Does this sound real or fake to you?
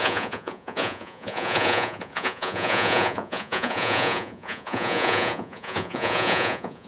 fake